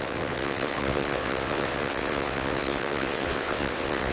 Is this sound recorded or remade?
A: remade